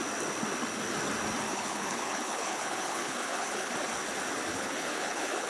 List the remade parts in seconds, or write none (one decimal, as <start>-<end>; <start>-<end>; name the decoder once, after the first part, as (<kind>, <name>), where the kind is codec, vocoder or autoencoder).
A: 1.5-3.7 (codec, HILCodec); 4.5-5.5